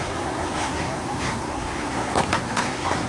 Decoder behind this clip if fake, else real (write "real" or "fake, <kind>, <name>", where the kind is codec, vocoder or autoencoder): fake, codec, SNAC